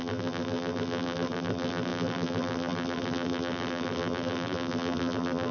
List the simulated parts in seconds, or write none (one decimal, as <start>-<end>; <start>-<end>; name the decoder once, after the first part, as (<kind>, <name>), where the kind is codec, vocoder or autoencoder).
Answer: 0.0-5.5 (vocoder, BigVGAN v2)